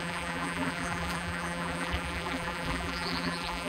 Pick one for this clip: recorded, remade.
remade